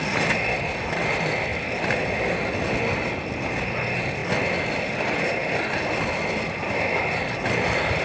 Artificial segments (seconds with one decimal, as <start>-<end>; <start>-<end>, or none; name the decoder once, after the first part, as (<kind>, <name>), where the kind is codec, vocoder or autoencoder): none